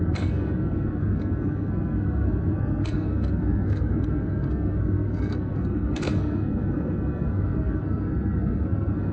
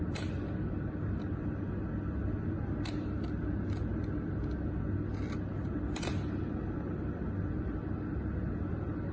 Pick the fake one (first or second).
first